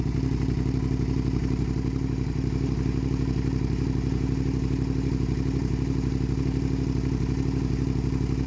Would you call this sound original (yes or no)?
yes